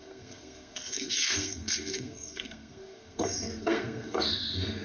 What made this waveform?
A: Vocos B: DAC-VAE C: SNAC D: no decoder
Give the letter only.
C